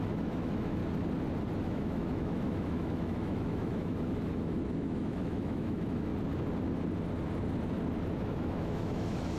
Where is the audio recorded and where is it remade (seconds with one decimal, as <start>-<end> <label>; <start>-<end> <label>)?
0.0-0.8 remade; 0.8-1.6 recorded; 1.6-6.1 remade; 6.1-8.2 recorded; 8.2-9.4 remade